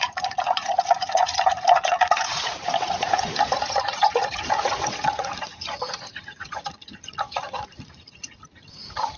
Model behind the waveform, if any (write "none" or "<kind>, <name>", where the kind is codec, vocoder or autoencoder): vocoder, Vocos